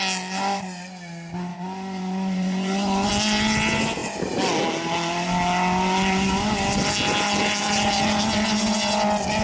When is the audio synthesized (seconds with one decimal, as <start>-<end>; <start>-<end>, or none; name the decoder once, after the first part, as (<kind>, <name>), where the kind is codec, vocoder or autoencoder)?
1.5-3.1 (vocoder, Vocos)